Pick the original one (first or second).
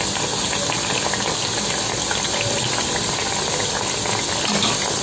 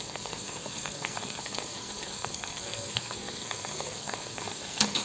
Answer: first